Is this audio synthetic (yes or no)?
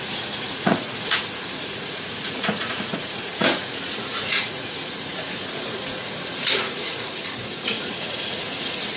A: yes